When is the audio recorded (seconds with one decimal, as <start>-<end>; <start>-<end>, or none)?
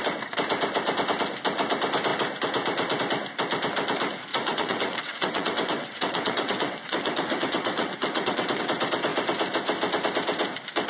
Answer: 0.0-4.3; 8.6-10.9